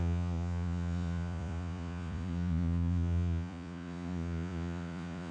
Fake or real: fake